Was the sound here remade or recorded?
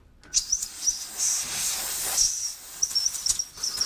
recorded